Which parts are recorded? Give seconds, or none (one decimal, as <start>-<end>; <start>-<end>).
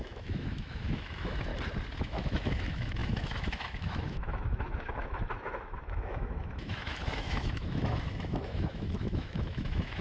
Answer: 1.5-2.0